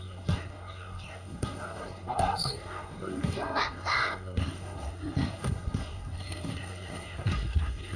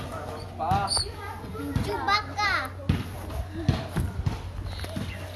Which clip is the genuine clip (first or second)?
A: second